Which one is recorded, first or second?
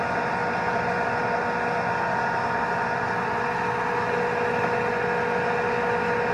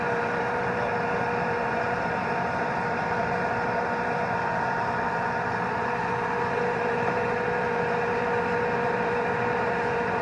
first